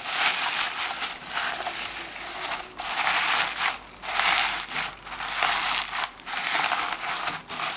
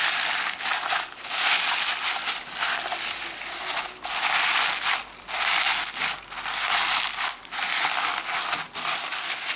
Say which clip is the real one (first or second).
second